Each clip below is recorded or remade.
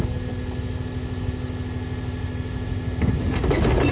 recorded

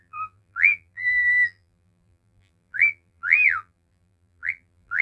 remade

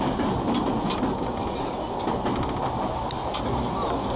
recorded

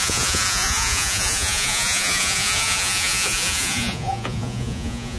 remade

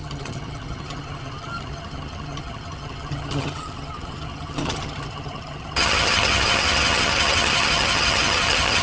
remade